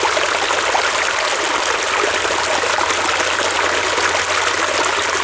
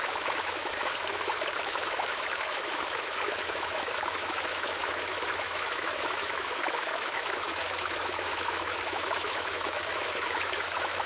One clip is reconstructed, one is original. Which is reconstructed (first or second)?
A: second